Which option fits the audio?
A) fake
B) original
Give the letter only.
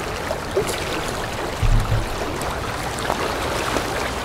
B